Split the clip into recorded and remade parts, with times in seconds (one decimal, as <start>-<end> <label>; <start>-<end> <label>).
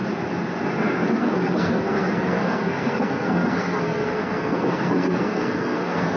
0.0-1.1 recorded; 1.1-6.2 remade